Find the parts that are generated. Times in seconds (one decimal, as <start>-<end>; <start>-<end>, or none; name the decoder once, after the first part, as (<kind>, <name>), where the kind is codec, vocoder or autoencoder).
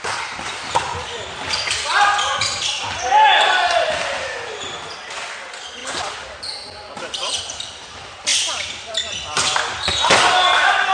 none